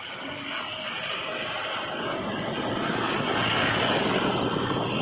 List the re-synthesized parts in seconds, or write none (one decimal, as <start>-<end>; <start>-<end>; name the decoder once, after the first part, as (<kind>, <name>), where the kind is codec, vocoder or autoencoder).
none